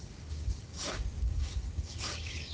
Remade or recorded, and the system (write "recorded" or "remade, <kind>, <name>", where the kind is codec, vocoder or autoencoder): remade, codec, DAC